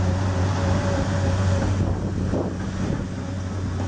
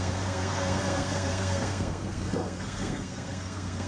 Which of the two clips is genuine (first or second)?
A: first